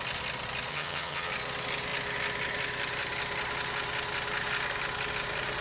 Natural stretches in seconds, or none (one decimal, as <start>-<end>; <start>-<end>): 0.0-0.7; 1.3-5.6